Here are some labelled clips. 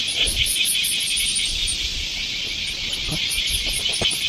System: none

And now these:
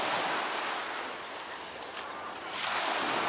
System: none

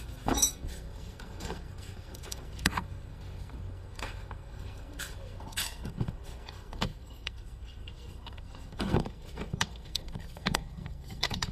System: codec, SNAC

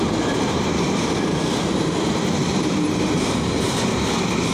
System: none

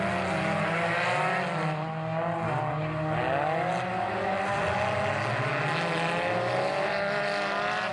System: none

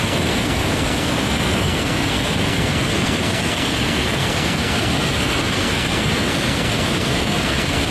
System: codec, SNAC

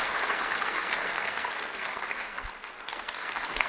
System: codec, SNAC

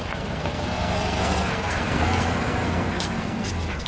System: codec, SNAC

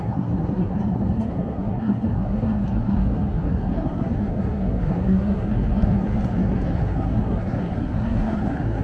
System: codec, SNAC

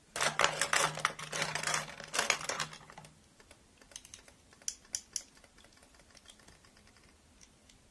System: none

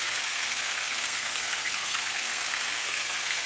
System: codec, SNAC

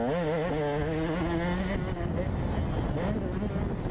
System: none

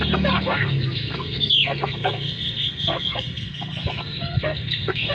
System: codec, SNAC